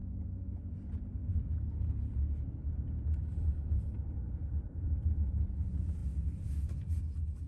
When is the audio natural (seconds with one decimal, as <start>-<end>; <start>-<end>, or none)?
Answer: 0.6-7.5